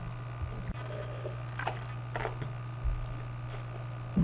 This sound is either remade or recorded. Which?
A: recorded